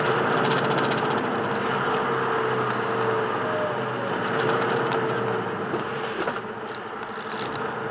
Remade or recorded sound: recorded